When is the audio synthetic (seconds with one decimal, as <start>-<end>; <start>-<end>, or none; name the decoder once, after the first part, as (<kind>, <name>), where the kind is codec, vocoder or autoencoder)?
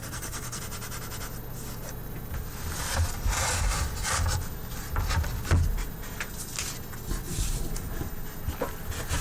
0.0-0.6 (codec, SNAC)